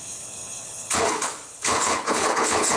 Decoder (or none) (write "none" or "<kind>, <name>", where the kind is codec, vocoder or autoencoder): codec, HILCodec